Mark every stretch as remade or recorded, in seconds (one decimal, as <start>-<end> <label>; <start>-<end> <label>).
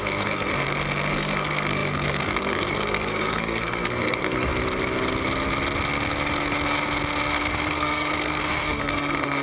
0.0-0.5 remade; 0.5-1.1 recorded; 1.1-4.5 remade; 4.5-7.3 recorded; 7.3-9.4 remade